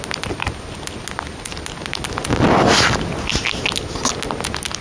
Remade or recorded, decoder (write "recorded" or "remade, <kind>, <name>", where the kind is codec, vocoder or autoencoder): recorded